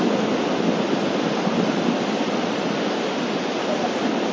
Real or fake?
real